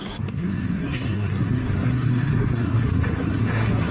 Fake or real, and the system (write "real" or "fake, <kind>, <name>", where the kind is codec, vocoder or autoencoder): fake, codec, SNAC